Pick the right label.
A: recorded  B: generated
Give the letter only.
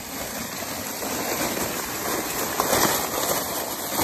A